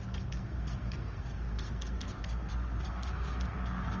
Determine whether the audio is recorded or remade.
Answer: remade